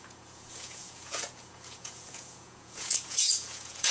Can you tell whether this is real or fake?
fake